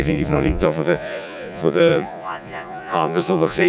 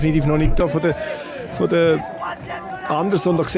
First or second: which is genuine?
second